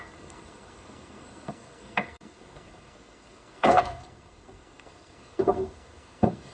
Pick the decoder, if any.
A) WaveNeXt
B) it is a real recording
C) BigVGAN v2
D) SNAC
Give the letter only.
D